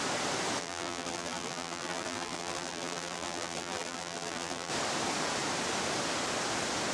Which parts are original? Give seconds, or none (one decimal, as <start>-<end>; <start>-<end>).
0.0-0.6; 4.7-6.9